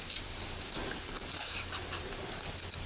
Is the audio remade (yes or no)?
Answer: no